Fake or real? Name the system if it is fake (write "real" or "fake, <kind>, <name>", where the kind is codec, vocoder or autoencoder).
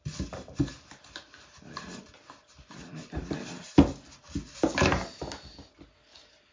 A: real